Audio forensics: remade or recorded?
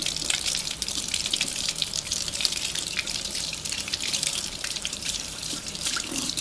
remade